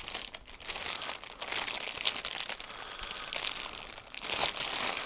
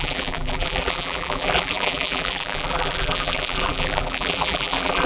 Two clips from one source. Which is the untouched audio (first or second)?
first